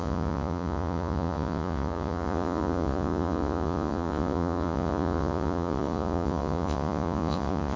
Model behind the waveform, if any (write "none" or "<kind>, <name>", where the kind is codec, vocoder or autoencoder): vocoder, Vocos